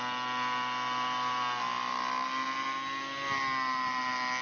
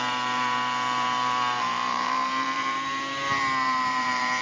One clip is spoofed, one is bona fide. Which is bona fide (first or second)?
first